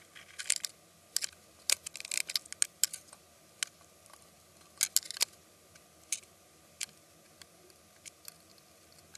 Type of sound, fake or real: real